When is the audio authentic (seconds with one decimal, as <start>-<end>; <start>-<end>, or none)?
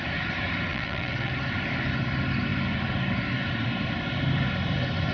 0.0-0.7; 1.3-5.1